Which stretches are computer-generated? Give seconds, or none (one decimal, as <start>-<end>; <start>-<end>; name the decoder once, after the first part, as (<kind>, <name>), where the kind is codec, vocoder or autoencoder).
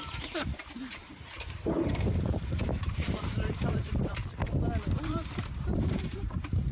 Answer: 0.0-4.2 (vocoder, BigVGAN v2); 4.9-6.7